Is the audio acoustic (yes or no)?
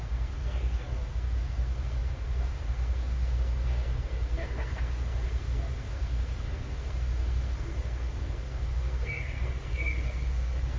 no